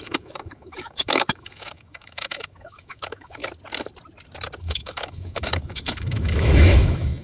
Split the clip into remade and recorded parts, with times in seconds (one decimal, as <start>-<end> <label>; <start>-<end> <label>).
0.0-3.4 remade; 3.4-4.6 recorded; 4.6-7.2 remade